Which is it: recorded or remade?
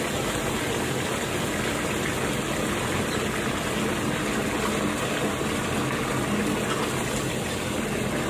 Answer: recorded